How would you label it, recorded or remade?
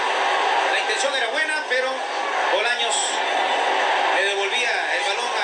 recorded